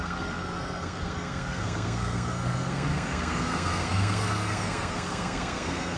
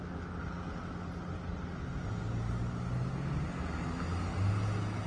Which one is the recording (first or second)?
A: second